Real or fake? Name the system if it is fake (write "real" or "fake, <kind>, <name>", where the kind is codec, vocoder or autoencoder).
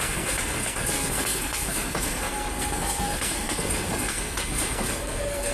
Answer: fake, codec, SNAC